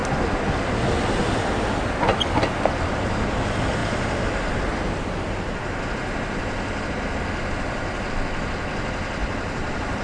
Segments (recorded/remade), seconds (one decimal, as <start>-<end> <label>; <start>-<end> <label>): 0.0-9.2 recorded; 9.2-10.0 remade